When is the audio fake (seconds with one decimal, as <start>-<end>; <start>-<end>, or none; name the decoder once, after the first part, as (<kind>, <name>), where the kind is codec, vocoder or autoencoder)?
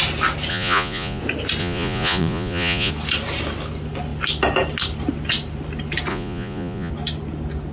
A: 0.5-1.2 (vocoder, Vocos); 1.6-2.9; 6.1-6.9